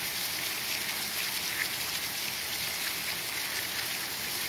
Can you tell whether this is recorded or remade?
recorded